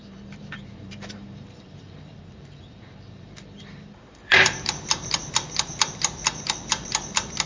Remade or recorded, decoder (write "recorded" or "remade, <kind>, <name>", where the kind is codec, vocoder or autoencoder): remade, vocoder, BigVGAN v2